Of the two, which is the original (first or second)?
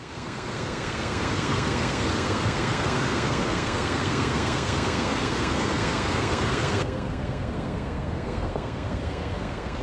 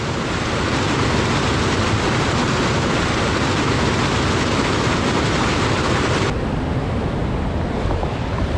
second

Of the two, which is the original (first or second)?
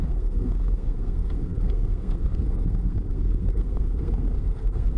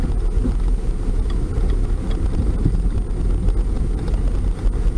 second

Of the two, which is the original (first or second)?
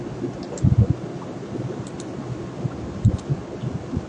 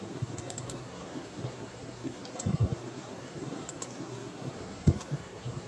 first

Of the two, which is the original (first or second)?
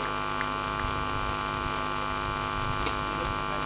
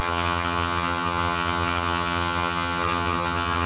first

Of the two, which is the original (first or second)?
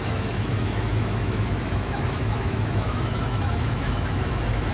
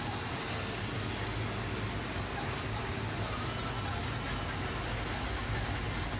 second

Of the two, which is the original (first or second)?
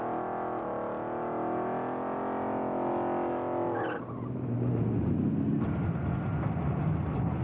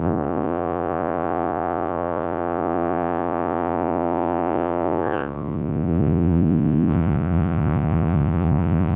first